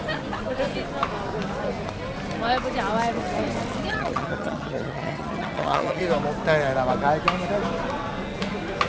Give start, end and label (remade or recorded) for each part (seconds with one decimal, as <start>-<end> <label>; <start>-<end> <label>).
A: 0.0-3.9 recorded; 3.9-6.0 remade; 6.0-8.9 recorded